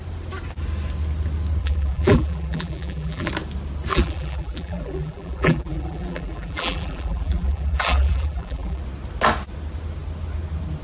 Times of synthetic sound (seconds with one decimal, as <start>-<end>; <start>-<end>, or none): 1.6-3.3; 3.9-8.8

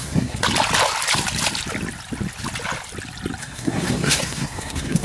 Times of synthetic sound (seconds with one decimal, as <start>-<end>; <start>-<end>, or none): 0.0-0.4; 3.4-5.0